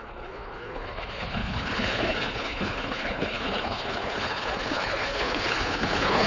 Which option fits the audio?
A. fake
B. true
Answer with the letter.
A